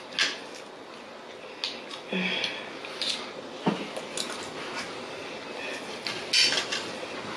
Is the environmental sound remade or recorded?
recorded